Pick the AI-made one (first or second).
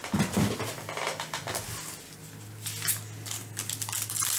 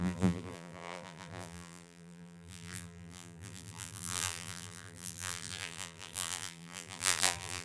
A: second